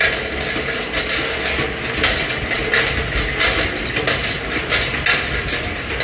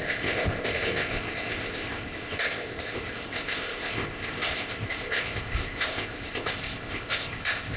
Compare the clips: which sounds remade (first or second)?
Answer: second